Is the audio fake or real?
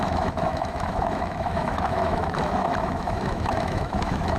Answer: fake